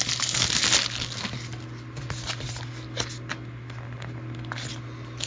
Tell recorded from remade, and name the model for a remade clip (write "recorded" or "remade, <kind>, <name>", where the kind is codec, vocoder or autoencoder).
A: recorded